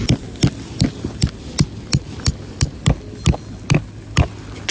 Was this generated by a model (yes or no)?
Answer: no